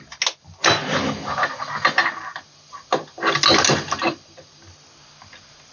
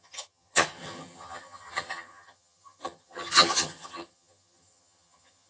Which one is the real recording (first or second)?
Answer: first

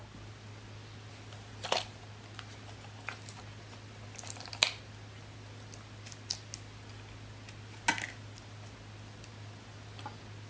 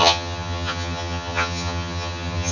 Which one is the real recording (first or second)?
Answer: first